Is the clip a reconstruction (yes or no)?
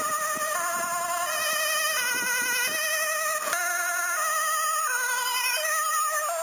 no